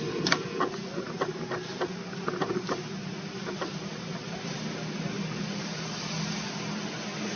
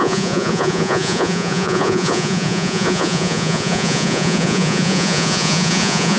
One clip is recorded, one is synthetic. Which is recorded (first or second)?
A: first